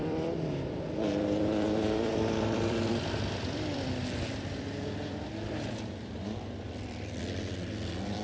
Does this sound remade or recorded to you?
remade